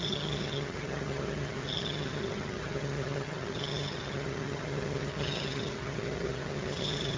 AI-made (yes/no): yes